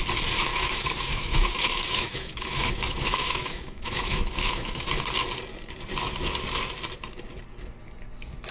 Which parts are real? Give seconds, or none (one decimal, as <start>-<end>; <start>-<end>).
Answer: 0.0-0.5; 4.9-8.5

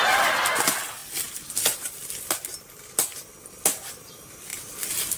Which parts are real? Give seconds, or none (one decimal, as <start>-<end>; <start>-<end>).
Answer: 0.0-5.2